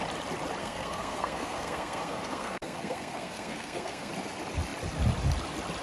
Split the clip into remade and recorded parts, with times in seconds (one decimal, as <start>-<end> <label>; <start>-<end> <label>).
0.0-0.6 recorded; 0.6-4.1 remade; 4.1-5.8 recorded